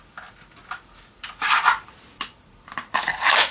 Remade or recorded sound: remade